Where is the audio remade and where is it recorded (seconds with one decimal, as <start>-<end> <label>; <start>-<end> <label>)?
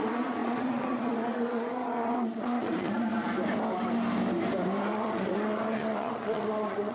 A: 0.0-3.1 remade; 3.1-4.8 recorded; 4.8-6.9 remade